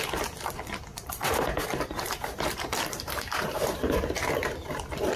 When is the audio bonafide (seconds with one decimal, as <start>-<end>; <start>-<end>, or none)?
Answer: 0.0-0.9; 4.0-5.2